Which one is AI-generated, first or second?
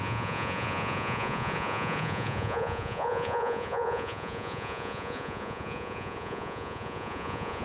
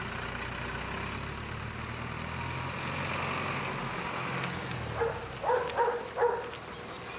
first